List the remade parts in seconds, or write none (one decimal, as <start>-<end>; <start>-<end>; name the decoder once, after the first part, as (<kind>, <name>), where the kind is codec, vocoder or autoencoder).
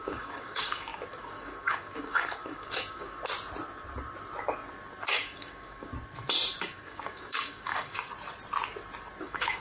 0.0-3.2 (codec, DAC); 5.1-5.9; 6.7-8.1; 9.2-9.6